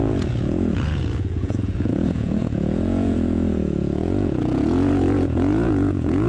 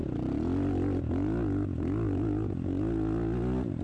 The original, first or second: second